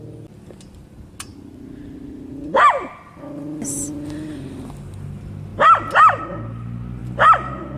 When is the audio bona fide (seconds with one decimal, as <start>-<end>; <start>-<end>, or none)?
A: 0.0-7.8